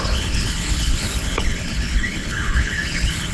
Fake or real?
fake